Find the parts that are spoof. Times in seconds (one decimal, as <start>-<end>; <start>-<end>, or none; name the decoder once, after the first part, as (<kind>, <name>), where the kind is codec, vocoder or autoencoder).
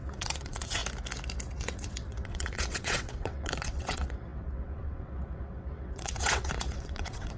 0.0-0.8 (vocoder, WaveNeXt); 1.5-7.4